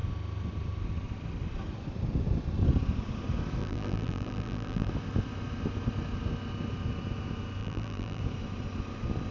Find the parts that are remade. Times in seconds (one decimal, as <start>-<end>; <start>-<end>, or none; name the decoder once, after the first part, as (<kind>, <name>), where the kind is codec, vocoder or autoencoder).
3.6-4.9 (vocoder, BigVGAN v2); 7.6-8.2